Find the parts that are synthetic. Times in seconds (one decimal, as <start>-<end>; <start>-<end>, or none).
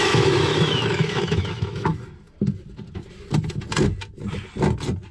0.0-1.9